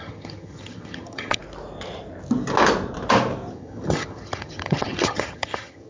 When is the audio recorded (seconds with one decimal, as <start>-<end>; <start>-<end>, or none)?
1.4-3.5